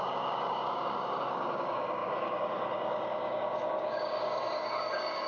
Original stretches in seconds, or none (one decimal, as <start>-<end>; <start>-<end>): none